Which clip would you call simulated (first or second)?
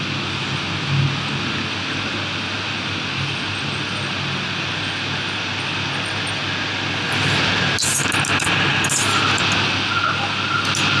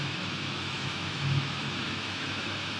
second